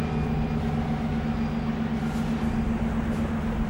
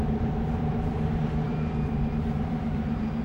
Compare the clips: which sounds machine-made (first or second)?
second